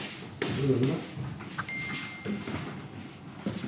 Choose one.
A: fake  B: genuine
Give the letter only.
B